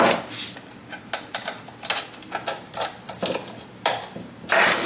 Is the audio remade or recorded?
recorded